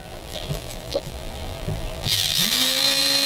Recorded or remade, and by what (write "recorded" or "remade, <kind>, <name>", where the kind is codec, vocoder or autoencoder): remade, vocoder, BigVGAN v2